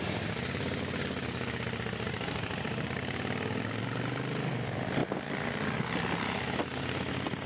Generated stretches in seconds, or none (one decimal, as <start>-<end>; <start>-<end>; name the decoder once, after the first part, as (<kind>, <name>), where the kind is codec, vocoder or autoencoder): none